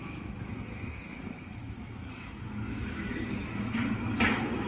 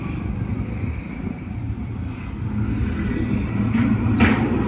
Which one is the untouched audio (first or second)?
second